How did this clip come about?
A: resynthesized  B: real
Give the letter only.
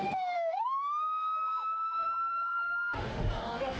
A